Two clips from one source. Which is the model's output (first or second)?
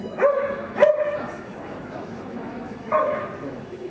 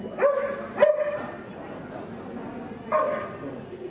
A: first